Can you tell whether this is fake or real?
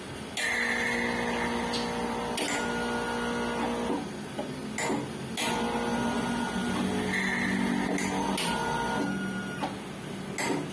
real